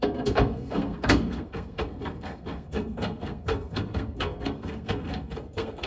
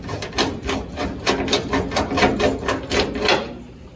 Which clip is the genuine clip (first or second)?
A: second